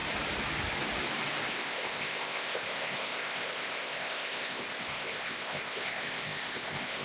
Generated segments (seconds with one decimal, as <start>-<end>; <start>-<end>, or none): 1.5-7.0